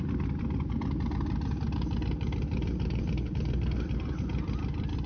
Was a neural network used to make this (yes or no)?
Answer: yes